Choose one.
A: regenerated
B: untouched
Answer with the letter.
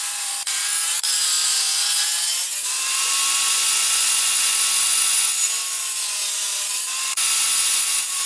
A